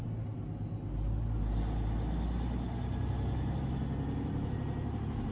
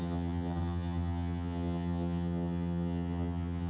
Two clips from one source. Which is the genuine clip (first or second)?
first